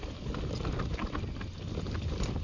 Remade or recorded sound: recorded